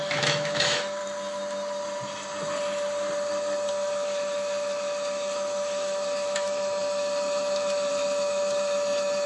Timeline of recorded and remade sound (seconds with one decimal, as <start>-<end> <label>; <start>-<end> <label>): 0.0-1.0 remade; 1.0-3.7 recorded; 3.7-9.3 remade